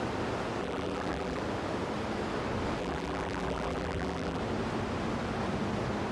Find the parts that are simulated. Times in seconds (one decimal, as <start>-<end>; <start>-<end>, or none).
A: 0.6-1.4; 2.8-4.4